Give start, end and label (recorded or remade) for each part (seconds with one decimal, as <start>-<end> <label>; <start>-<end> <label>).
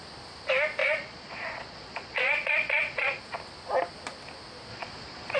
0.0-0.8 recorded; 0.8-3.2 remade; 3.2-4.7 recorded; 4.7-5.4 remade